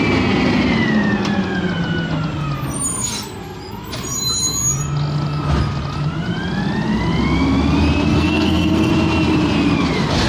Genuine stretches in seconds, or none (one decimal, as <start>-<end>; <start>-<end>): 0.0-8.1; 8.9-10.3